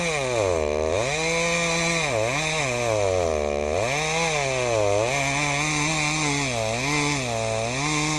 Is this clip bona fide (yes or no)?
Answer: yes